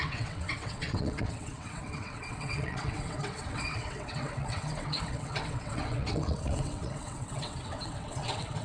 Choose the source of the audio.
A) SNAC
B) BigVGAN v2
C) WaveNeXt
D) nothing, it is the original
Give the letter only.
C